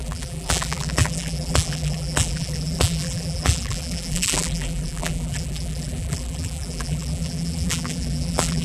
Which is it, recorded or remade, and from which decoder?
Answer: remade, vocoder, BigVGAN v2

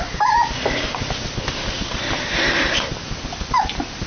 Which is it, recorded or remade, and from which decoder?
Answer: recorded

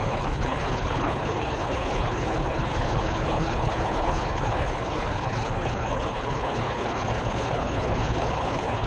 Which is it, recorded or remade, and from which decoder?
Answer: remade, codec, HILCodec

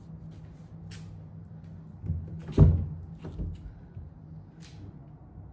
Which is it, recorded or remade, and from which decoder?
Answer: recorded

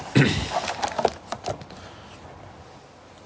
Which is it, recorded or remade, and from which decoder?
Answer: recorded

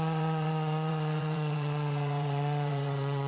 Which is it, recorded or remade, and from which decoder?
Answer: remade, vocoder, WaveNeXt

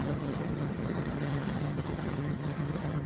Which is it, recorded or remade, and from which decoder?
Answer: remade, vocoder, HiFi-GAN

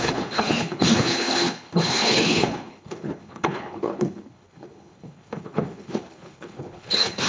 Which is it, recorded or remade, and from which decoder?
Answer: remade, codec, HILCodec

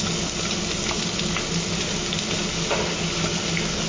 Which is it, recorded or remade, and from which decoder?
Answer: recorded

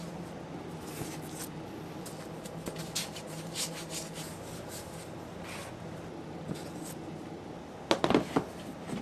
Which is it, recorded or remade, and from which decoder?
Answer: recorded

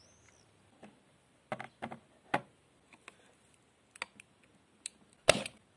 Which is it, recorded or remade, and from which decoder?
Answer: recorded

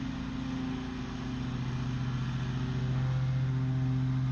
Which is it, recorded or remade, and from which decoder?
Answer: recorded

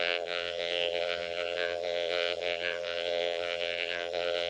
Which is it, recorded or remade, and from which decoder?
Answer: remade, vocoder, BigVGAN v2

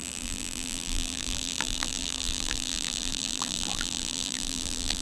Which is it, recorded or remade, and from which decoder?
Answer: remade, vocoder, BigVGAN v2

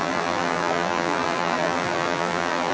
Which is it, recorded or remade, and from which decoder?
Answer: remade, vocoder, BigVGAN v2